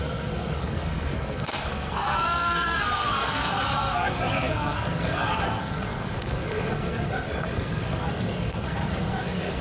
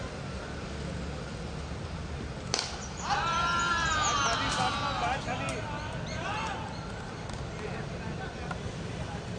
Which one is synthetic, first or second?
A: first